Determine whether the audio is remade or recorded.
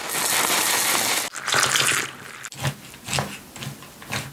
recorded